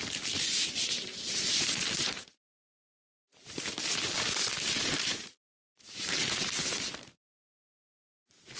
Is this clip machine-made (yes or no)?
yes